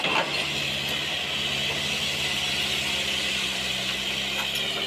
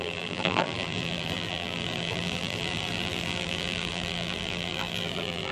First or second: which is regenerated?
second